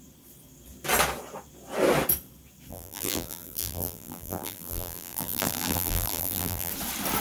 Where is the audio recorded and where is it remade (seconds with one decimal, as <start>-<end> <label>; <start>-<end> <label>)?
0.0-2.7 recorded; 2.7-6.7 remade; 6.7-7.2 recorded

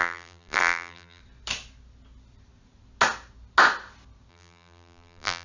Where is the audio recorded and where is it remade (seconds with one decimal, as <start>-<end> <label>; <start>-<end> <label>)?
0.0-1.2 remade; 1.2-4.3 recorded; 4.3-5.4 remade

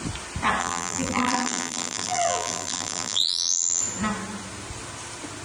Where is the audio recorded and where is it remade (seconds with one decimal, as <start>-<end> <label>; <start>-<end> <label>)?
0.0-0.6 recorded; 0.6-3.8 remade; 3.8-5.4 recorded

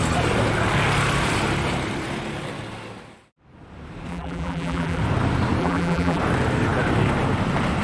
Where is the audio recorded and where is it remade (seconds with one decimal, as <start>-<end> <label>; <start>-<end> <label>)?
0.0-4.1 recorded; 4.1-5.0 remade; 5.0-5.6 recorded; 5.6-6.2 remade; 6.2-7.8 recorded

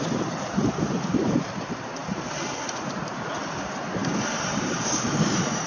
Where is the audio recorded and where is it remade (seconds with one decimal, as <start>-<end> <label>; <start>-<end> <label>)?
0.0-4.0 remade; 4.0-4.5 recorded; 4.5-5.7 remade

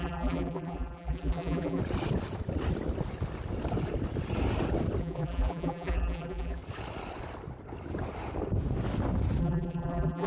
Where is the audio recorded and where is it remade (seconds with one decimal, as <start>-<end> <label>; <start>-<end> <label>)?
0.0-1.8 remade; 1.8-5.0 recorded; 5.0-6.6 remade; 6.6-9.4 recorded; 9.4-10.3 remade

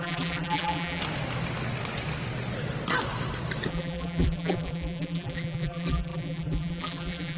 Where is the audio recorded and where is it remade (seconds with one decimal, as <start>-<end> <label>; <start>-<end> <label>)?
0.0-1.0 remade; 1.0-3.7 recorded; 3.7-7.4 remade